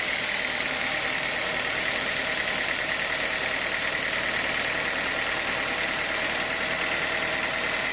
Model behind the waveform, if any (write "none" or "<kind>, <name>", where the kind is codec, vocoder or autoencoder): none